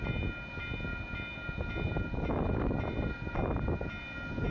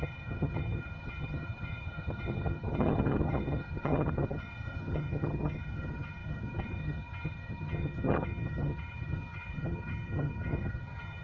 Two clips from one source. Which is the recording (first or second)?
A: first